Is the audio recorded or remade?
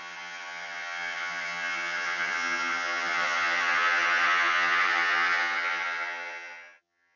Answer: remade